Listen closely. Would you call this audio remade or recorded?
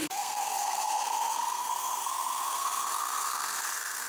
remade